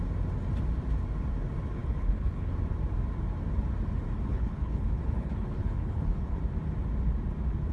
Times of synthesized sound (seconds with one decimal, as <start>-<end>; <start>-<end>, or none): 1.8-2.5; 4.3-6.4